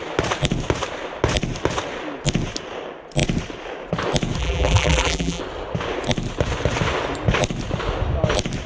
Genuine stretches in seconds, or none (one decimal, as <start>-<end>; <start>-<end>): 0.0-4.4; 5.4-8.7